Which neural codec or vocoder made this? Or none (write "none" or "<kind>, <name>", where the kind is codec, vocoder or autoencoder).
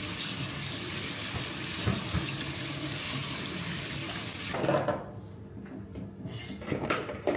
none